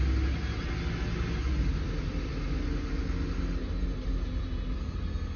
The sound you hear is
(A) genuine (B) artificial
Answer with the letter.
A